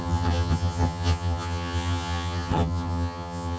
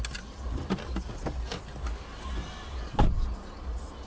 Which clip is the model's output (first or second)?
first